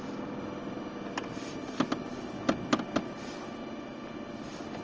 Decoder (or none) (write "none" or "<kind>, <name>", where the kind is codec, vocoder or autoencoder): none